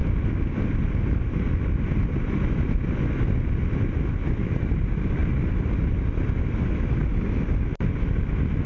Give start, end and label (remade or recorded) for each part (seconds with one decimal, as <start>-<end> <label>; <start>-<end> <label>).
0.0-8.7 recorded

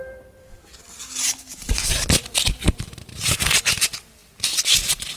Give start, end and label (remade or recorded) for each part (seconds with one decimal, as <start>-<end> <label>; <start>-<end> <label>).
0.0-1.5 recorded; 1.5-3.8 remade; 3.8-5.2 recorded

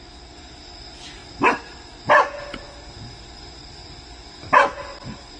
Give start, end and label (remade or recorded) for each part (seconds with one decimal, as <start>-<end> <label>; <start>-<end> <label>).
0.0-5.4 recorded

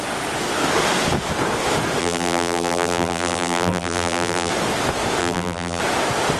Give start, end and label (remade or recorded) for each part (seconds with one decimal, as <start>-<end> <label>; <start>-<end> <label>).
0.0-2.0 recorded; 2.0-4.5 remade; 4.5-5.2 recorded; 5.2-5.8 remade; 5.8-6.4 recorded

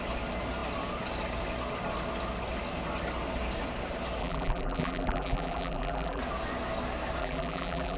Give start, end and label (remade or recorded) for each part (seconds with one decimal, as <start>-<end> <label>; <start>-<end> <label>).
0.0-4.2 recorded; 4.2-6.2 remade; 6.2-7.2 recorded; 7.2-8.0 remade

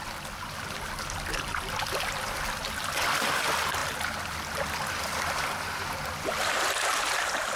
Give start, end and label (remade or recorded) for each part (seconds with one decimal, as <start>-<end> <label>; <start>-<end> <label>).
0.0-7.6 recorded